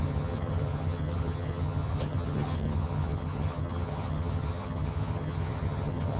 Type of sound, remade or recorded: remade